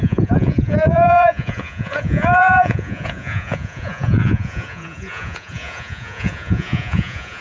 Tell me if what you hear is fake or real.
fake